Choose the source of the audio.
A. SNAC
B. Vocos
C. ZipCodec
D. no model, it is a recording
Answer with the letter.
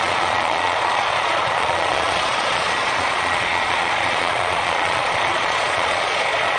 B